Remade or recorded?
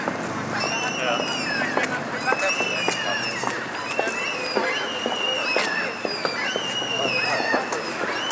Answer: recorded